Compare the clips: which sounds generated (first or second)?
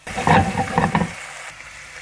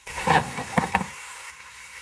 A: second